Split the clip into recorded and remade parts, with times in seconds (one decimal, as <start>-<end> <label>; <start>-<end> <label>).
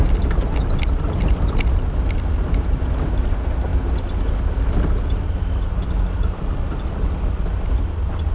0.0-8.3 recorded